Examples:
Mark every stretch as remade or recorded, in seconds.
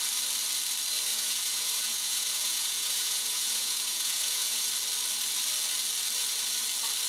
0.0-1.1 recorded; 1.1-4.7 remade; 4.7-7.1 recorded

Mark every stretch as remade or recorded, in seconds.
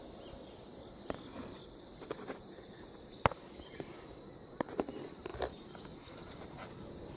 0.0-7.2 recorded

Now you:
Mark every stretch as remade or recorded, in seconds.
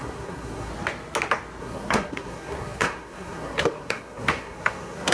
0.0-0.7 remade; 0.7-1.6 recorded; 1.6-5.1 remade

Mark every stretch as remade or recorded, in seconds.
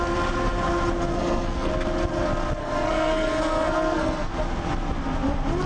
0.0-1.1 recorded; 1.1-1.7 remade; 1.7-2.6 recorded; 2.6-4.3 remade; 4.3-5.7 recorded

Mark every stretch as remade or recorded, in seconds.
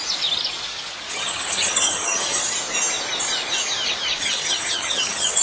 0.0-1.1 recorded; 1.1-2.4 remade; 2.4-4.2 recorded; 4.2-5.4 remade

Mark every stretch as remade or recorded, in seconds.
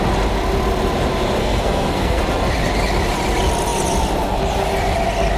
0.0-1.4 recorded; 1.4-2.2 remade; 2.2-5.4 recorded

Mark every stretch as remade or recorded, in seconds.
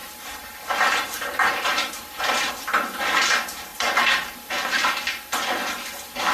0.0-2.5 remade; 2.5-3.7 recorded; 3.7-4.5 remade; 4.5-6.3 recorded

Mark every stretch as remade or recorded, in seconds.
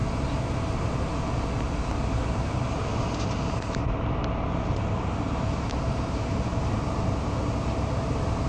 0.0-8.5 recorded